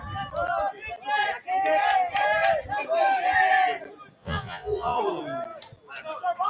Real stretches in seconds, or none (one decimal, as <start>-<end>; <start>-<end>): 0.0-4.2; 5.0-6.5